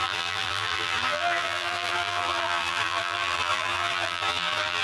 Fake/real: fake